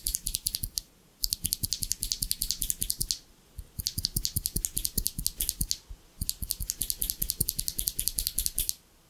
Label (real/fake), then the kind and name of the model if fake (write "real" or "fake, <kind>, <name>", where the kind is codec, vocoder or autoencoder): real